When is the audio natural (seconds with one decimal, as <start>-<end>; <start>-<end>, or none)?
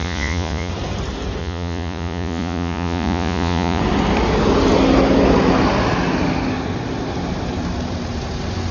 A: 0.7-1.4; 3.8-8.7